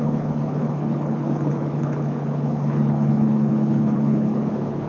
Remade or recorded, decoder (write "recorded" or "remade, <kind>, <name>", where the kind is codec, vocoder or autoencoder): remade, codec, HILCodec